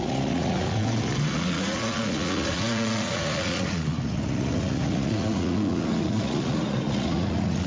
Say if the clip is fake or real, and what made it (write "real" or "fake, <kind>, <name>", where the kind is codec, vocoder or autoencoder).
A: fake, vocoder, Vocos